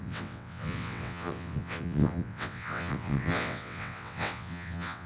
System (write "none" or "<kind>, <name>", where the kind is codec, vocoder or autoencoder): vocoder, WaveNeXt